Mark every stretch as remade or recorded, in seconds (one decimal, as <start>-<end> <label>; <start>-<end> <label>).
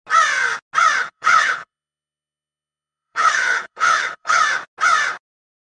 0.0-1.0 recorded; 1.0-4.4 remade; 4.4-5.6 recorded